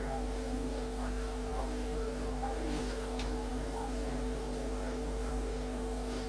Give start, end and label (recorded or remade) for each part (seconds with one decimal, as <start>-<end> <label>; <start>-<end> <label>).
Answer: 0.0-6.3 remade